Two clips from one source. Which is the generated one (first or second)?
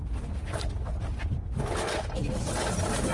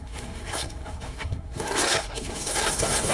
second